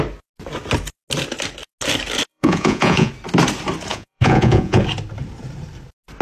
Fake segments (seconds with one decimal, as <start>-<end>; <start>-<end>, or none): 2.3-3.1; 3.9-4.8